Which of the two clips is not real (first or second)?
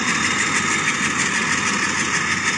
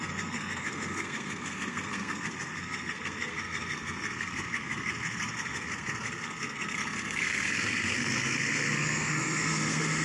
second